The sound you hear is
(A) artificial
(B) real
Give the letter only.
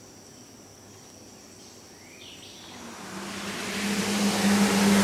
B